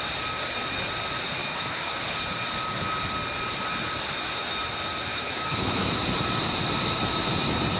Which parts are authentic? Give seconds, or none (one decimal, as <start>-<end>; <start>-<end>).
0.0-1.4; 2.0-5.1; 5.9-7.8

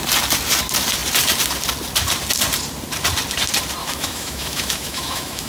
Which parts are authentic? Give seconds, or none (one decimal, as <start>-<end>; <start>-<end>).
0.0-3.8

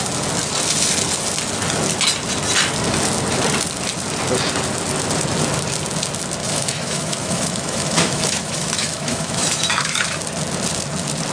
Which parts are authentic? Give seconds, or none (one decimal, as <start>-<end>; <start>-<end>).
0.0-6.4; 10.2-11.3

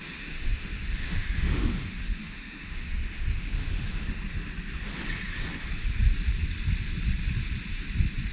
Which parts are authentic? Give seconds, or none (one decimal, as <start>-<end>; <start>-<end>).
4.2-8.3

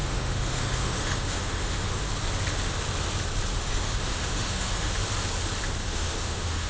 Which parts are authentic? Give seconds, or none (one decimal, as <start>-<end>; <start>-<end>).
2.0-3.6; 4.9-5.8

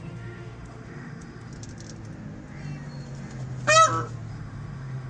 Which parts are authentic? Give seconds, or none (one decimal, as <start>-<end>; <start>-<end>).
1.5-4.3

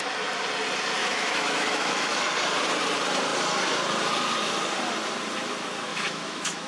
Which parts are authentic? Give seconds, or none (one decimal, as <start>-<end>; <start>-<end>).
0.0-1.0; 2.2-5.9

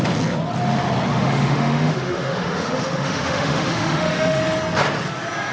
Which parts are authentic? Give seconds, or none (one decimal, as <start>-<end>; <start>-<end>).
0.0-1.1; 4.4-5.5